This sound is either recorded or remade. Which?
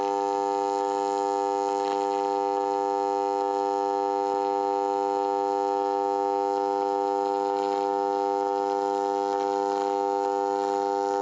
recorded